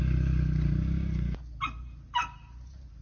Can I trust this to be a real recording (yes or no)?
yes